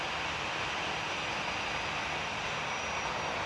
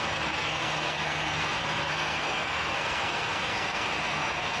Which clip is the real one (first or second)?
first